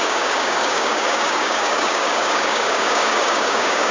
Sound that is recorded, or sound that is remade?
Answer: remade